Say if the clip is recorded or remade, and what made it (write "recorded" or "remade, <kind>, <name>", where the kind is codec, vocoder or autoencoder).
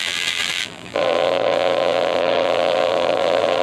remade, vocoder, BigVGAN v2